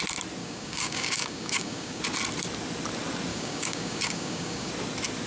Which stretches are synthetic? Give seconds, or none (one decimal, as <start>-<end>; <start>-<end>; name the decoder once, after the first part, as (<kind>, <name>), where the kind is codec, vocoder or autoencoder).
0.4-2.0 (codec, DAC); 3.3-4.7